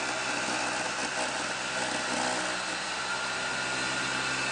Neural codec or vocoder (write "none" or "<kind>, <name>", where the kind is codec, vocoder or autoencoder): none